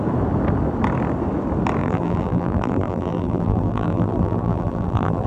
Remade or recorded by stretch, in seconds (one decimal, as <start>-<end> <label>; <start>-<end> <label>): 0.0-1.8 recorded; 1.8-5.3 remade